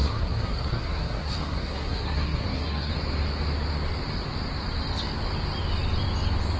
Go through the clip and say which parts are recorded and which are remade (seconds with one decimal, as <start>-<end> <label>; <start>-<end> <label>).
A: 0.0-2.9 remade; 2.9-6.6 recorded